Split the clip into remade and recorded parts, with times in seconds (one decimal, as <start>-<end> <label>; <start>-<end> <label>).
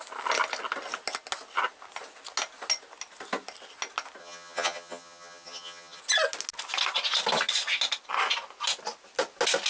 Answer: 0.0-4.2 recorded; 4.2-6.0 remade; 6.0-9.7 recorded